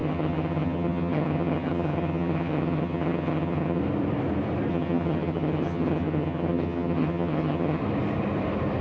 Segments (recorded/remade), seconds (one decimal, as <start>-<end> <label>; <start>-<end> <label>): 0.0-3.8 remade; 3.8-4.7 recorded; 4.7-7.8 remade; 7.8-8.8 recorded